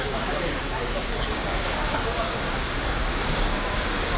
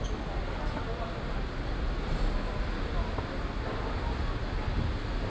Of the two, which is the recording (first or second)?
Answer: second